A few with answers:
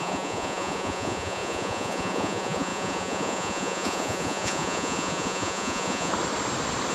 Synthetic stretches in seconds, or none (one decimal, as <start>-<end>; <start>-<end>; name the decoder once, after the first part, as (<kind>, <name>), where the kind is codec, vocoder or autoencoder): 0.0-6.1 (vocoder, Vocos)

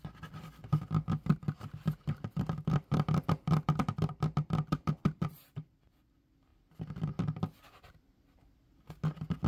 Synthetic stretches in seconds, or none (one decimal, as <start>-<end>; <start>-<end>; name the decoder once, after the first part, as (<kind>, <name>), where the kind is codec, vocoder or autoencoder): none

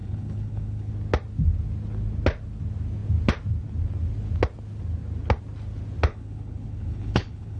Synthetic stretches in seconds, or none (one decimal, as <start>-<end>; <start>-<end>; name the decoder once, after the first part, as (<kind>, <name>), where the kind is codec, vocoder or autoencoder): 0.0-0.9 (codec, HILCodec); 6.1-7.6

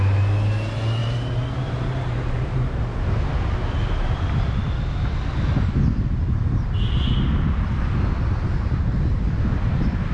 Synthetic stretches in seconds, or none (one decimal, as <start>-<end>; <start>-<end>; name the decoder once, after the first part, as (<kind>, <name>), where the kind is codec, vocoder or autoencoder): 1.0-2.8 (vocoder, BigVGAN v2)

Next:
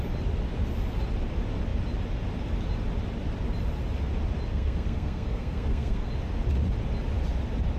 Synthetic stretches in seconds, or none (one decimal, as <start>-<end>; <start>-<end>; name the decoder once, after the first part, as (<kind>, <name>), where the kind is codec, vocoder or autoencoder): 4.5-6.1 (codec, SNAC)

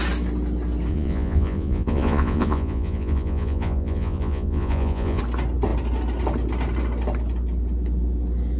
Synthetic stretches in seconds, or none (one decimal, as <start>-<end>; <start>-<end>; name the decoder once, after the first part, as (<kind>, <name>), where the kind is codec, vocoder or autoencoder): 0.9-5.2 (vocoder, Vocos)

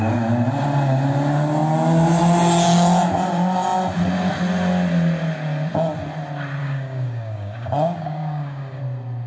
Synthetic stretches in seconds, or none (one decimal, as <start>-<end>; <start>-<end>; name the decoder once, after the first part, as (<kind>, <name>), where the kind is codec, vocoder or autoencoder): 6.6-8.8 (codec, DAC)